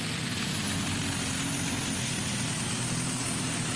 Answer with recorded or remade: recorded